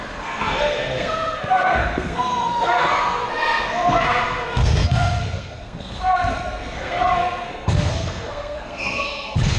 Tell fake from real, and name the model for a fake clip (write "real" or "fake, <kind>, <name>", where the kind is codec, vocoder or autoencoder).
fake, codec, SNAC